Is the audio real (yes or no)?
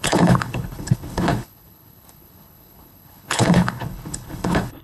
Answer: no